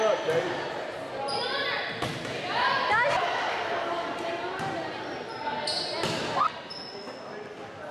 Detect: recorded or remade recorded